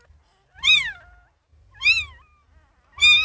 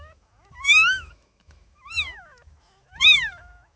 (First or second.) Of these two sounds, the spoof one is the second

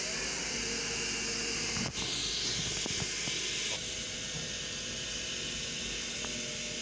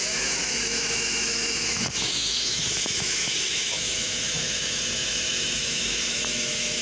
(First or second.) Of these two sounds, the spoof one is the second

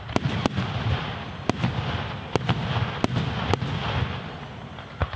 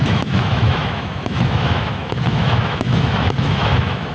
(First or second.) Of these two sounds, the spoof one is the second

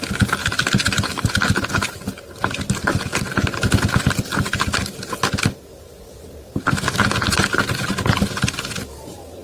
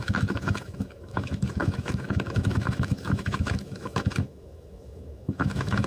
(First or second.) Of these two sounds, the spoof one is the second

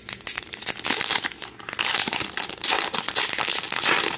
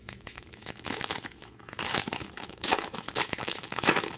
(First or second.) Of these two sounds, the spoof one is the second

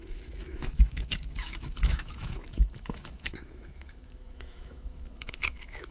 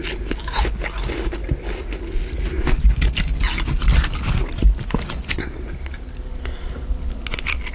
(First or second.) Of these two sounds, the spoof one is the first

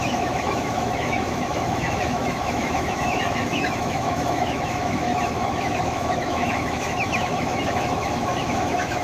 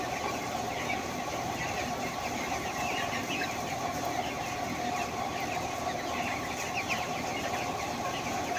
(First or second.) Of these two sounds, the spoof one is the first